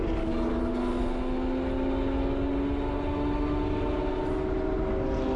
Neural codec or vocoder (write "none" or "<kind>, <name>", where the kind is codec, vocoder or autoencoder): none